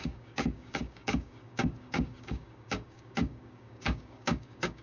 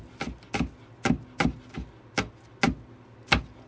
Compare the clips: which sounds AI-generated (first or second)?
first